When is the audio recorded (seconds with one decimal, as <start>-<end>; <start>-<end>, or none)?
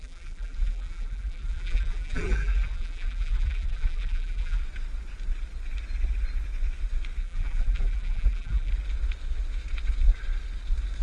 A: 4.6-7.2; 8.7-11.0